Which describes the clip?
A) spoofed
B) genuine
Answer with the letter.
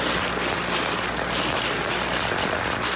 B